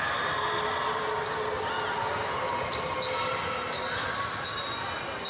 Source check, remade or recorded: recorded